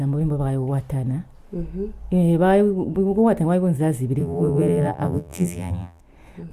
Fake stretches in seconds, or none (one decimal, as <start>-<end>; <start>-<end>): 4.2-6.0